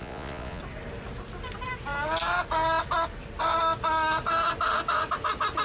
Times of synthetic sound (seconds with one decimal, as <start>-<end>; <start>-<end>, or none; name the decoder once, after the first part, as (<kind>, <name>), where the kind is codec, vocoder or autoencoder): 0.0-0.6 (vocoder, Vocos)